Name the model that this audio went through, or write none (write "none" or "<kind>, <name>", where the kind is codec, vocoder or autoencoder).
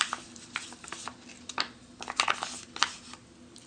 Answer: none